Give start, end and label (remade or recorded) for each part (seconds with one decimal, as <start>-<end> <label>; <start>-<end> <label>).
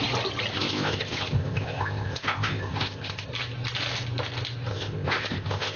0.0-0.5 recorded; 0.5-3.3 remade; 3.3-4.7 recorded; 4.7-5.8 remade